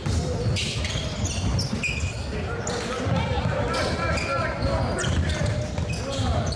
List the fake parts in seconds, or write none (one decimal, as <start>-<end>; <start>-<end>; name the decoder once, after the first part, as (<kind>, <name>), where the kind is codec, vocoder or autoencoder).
5.0-5.6 (vocoder, BigVGAN v2)